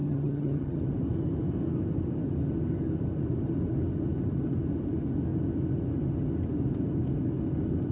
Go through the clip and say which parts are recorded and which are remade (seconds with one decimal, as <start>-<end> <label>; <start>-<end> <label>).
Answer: 0.0-0.8 remade; 0.8-7.9 recorded